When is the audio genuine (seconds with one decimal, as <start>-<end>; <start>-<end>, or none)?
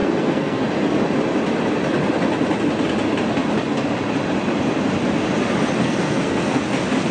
0.6-5.8; 6.6-7.1